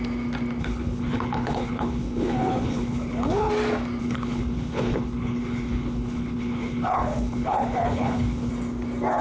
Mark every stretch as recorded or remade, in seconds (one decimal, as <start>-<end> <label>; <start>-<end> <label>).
0.0-0.6 recorded; 0.6-3.5 remade; 3.5-4.0 recorded; 4.0-8.5 remade; 8.5-9.2 recorded